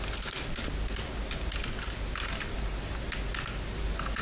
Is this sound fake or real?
real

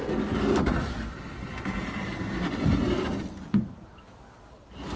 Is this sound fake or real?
real